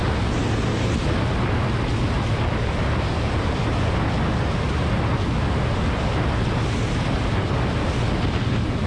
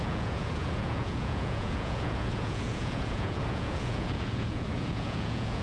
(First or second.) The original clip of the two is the first